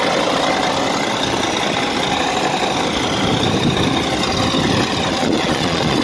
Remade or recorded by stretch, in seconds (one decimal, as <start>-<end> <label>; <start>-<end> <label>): 0.0-5.2 recorded; 5.2-6.0 remade